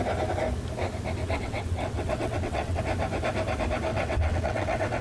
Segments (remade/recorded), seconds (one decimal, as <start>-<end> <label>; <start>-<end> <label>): 0.0-1.2 recorded; 1.2-2.8 remade; 2.8-3.9 recorded; 3.9-5.0 remade